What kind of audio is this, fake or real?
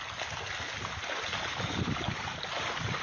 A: real